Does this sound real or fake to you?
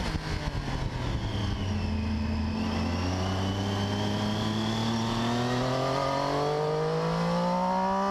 real